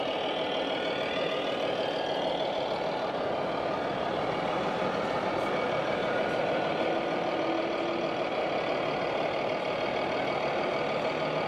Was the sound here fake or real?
real